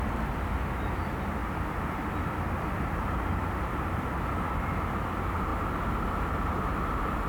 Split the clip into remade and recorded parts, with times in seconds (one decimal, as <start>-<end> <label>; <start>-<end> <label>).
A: 0.0-7.3 recorded